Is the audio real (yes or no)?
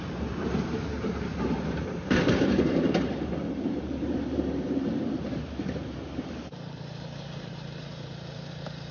no